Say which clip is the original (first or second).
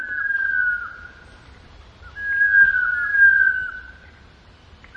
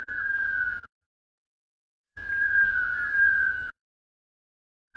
first